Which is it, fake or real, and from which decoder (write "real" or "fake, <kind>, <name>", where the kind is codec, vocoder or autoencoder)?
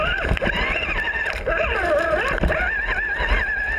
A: real